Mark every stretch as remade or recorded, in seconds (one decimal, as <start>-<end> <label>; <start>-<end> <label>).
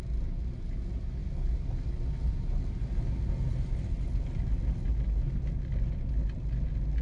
0.0-7.0 recorded